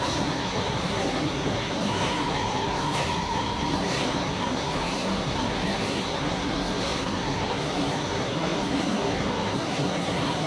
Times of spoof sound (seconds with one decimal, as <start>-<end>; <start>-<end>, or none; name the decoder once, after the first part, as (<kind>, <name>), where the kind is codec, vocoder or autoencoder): 0.0-10.5 (codec, SNAC)